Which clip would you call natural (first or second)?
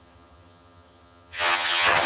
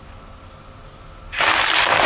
second